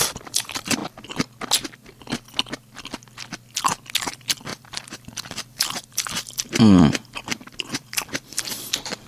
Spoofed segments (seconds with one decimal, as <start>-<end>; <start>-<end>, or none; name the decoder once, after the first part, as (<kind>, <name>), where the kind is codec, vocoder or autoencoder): 0.0-0.8 (vocoder, BigVGAN v2); 4.0-9.1